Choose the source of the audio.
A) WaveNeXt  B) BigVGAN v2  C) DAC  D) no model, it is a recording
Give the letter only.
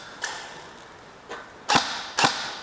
D